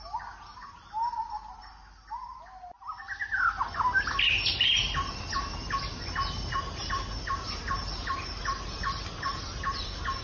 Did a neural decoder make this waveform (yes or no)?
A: no